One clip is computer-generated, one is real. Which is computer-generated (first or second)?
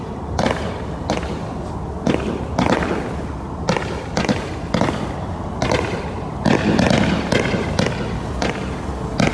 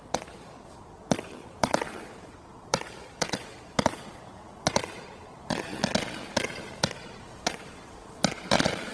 second